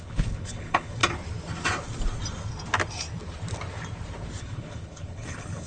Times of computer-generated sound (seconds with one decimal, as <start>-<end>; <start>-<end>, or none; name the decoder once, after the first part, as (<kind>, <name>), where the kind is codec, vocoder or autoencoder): 0.0-1.0 (codec, HILCodec); 4.4-5.7